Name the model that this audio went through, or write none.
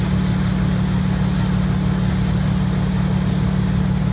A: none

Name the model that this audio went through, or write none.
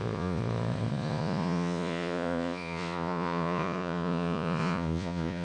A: vocoder, Vocos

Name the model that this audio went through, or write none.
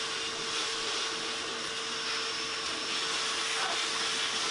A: none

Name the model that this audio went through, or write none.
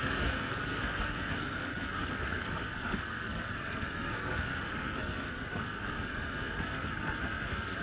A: codec, SNAC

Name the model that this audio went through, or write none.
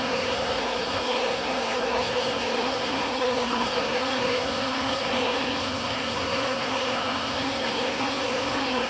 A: codec, SNAC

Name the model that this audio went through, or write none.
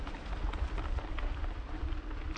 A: none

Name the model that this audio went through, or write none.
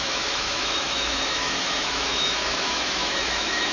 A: autoencoder, DAC-VAE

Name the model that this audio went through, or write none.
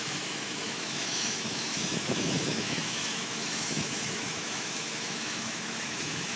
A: autoencoder, DAC-VAE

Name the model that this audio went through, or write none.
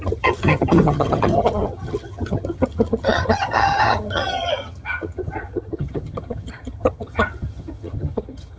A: vocoder, HiFi-GAN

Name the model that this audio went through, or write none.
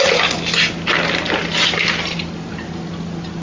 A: none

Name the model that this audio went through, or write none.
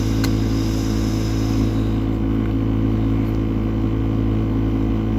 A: none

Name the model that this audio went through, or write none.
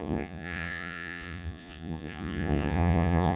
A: vocoder, Vocos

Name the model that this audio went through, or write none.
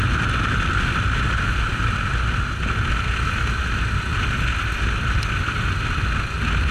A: none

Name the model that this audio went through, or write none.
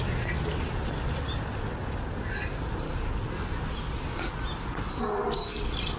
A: none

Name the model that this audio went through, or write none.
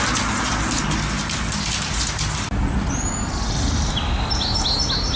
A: none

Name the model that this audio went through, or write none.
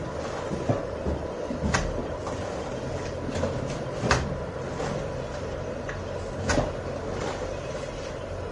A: none